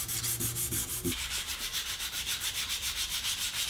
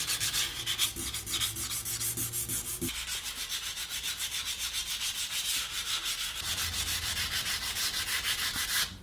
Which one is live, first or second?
second